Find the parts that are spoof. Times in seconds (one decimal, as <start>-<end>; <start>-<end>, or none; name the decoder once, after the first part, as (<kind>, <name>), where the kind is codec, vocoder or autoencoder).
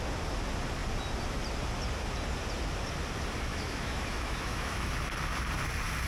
3.5-4.9 (autoencoder, DAC-VAE)